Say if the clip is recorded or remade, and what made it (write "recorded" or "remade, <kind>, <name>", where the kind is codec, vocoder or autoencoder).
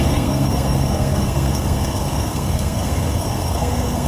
remade, codec, SNAC